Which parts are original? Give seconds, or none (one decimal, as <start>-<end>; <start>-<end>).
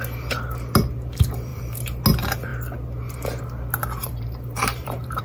0.0-1.5; 2.0-4.0